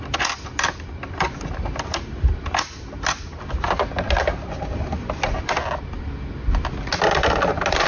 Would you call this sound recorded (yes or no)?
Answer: yes